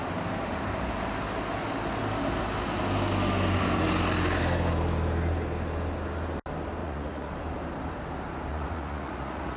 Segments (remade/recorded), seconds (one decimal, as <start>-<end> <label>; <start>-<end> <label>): 0.0-6.8 recorded; 6.8-7.3 remade; 7.3-8.5 recorded; 8.5-9.6 remade